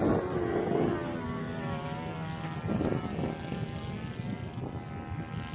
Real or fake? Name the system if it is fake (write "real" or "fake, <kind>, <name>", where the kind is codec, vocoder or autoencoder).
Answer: real